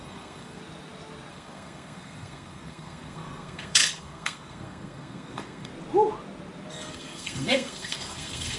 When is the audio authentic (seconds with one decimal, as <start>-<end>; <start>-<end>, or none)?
0.6-1.3; 5.7-6.7